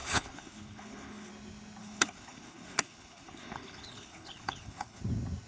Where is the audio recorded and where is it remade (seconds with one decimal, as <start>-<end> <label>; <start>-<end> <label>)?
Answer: 0.0-1.3 remade; 1.3-1.8 recorded; 1.8-5.0 remade; 5.0-5.5 recorded

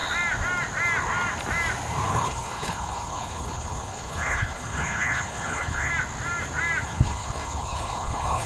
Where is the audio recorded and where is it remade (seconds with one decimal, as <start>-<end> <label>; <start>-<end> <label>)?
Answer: 0.0-2.1 recorded; 2.1-5.9 remade; 5.9-6.8 recorded; 6.8-8.5 remade

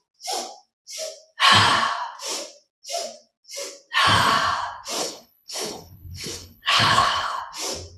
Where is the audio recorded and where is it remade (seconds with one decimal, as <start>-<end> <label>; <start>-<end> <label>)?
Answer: 0.0-5.0 recorded; 5.0-7.4 remade; 7.4-8.0 recorded

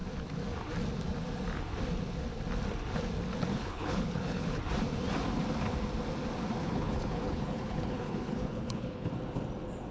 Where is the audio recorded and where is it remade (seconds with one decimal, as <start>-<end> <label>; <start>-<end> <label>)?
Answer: 0.0-3.5 recorded; 3.5-4.6 remade; 4.6-6.6 recorded; 6.6-9.1 remade; 9.1-9.9 recorded

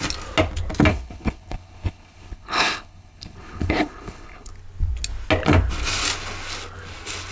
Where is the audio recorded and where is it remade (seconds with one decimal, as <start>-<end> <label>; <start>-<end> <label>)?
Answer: 0.0-0.9 recorded; 0.9-4.5 remade; 4.5-7.3 recorded